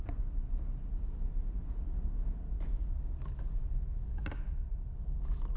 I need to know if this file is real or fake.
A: real